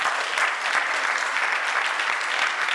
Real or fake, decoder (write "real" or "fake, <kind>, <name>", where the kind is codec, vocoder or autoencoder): real